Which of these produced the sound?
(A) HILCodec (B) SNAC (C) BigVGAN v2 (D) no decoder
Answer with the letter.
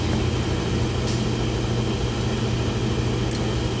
D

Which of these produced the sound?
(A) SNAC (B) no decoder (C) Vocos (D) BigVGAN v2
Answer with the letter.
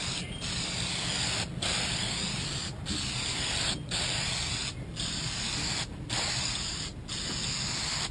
B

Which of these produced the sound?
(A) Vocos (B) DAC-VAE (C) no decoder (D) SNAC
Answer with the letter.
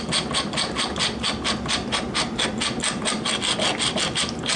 C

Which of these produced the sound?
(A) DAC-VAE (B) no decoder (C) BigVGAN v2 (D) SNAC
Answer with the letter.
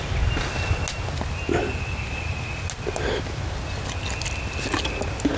B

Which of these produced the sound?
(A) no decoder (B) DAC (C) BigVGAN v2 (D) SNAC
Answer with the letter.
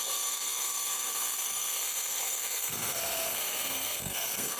D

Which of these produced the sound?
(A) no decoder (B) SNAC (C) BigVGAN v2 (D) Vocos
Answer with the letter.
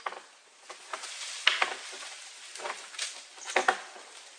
A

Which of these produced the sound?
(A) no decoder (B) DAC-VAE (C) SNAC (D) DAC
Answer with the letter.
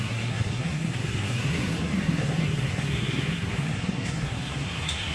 C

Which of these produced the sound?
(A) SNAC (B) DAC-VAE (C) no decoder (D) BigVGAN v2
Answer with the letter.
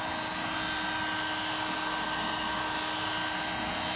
C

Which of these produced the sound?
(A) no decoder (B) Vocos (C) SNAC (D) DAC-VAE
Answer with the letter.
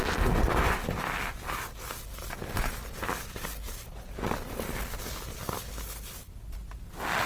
A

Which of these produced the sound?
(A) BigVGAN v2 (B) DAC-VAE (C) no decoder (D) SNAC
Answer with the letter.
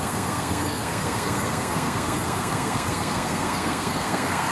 D